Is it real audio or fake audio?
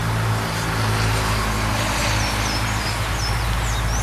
real